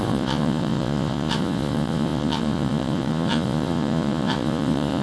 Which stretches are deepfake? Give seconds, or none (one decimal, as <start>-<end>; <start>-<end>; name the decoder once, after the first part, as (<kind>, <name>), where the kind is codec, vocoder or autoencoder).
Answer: 0.0-5.0 (vocoder, Vocos)